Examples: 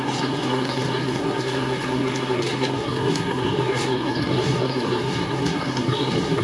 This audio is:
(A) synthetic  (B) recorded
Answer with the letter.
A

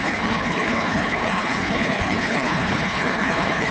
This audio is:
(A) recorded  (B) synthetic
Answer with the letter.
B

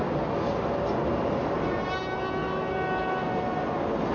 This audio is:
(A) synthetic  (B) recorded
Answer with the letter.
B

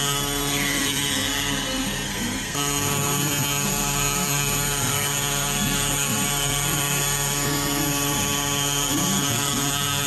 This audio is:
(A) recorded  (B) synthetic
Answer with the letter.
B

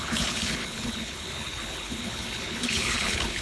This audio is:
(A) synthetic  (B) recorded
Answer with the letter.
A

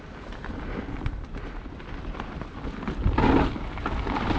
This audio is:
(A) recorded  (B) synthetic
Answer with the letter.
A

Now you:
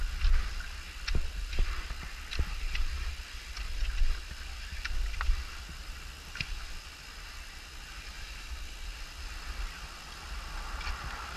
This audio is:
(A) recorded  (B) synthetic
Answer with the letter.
A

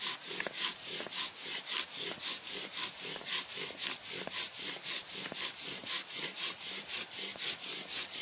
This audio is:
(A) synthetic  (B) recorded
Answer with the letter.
A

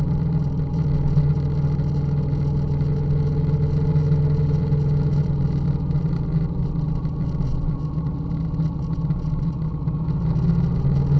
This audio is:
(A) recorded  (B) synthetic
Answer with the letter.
A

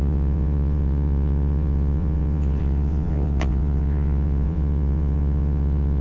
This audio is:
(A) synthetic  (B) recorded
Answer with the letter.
A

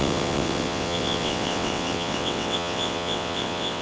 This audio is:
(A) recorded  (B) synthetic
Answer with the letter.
B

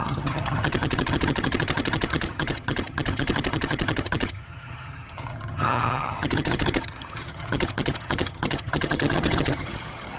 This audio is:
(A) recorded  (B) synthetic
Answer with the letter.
B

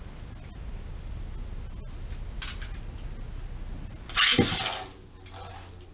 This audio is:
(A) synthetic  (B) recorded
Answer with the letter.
B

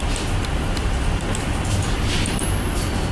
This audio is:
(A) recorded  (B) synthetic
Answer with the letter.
A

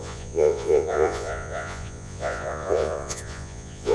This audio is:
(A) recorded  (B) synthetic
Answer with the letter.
B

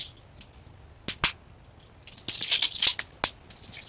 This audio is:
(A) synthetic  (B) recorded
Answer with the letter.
B